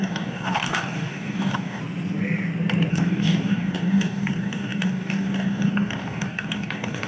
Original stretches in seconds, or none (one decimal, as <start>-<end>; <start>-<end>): 1.8-2.9